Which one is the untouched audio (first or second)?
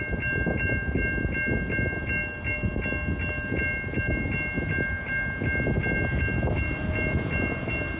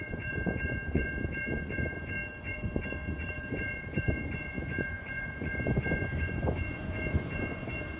first